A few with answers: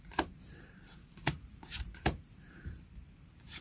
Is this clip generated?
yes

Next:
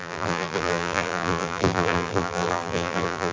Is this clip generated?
yes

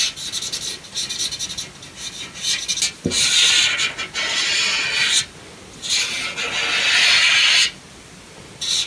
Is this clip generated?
no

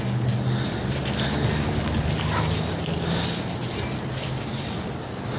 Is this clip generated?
no